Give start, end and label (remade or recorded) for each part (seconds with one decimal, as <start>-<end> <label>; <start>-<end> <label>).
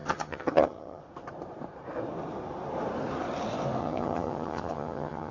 0.0-1.0 remade; 1.0-3.8 recorded; 3.8-5.3 remade